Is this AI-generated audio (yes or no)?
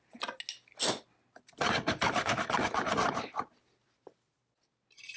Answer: no